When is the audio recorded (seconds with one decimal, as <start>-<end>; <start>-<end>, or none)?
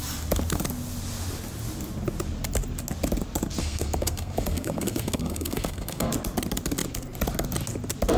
0.0-3.6; 6.1-8.2